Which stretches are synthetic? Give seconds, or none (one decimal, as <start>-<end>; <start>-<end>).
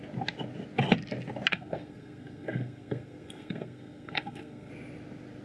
1.5-4.7